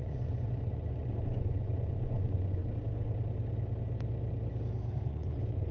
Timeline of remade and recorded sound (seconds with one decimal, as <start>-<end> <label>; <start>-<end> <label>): 0.0-2.6 remade; 2.6-4.9 recorded; 4.9-5.7 remade